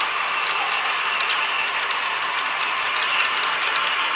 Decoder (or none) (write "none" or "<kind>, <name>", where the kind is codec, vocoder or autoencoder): none